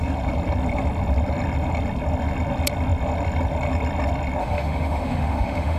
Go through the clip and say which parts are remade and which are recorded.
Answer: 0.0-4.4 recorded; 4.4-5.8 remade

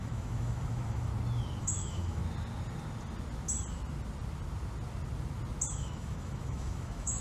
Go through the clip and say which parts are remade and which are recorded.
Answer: 0.0-1.1 remade; 1.1-1.6 recorded; 1.6-2.2 remade; 2.2-5.7 recorded; 5.7-7.2 remade

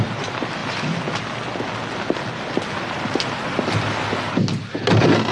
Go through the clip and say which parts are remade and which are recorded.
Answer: 0.0-5.3 recorded